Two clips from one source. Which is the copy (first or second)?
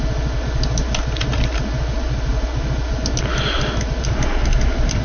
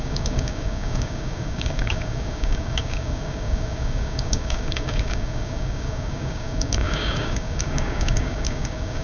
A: second